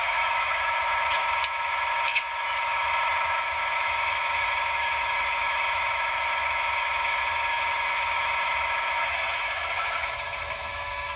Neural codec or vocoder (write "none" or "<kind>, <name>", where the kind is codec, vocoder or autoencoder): autoencoder, DAC-VAE